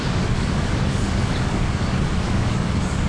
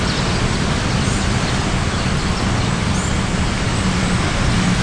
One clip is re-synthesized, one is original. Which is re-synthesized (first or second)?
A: first